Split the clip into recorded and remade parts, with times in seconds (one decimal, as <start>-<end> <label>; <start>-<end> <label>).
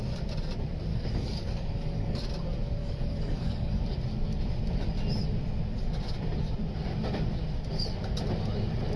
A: 0.0-0.9 recorded; 0.9-2.2 remade; 2.2-2.8 recorded; 2.8-3.8 remade; 3.8-9.0 recorded